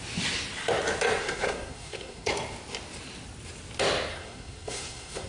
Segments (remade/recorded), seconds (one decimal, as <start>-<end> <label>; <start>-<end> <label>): 0.0-1.2 recorded; 1.2-2.3 remade; 2.3-4.1 recorded; 4.1-5.3 remade

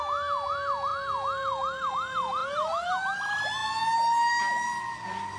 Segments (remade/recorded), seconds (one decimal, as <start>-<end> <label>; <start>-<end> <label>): 0.0-5.4 recorded

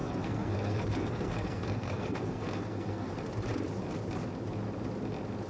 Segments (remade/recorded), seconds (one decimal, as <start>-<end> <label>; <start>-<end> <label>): 0.0-3.1 remade; 3.1-5.5 recorded

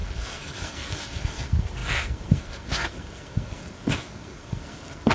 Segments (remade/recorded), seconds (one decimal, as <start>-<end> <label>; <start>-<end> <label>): 0.0-5.1 remade